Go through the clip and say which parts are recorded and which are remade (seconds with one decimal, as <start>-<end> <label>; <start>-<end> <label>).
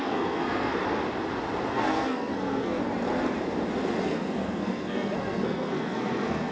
0.0-0.7 remade; 0.7-1.7 recorded; 1.7-2.8 remade; 2.8-4.0 recorded; 4.0-6.5 remade